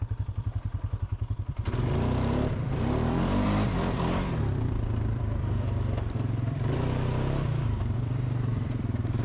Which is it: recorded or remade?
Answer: remade